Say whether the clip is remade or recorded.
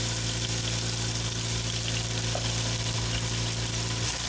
recorded